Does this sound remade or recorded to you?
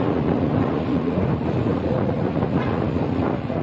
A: remade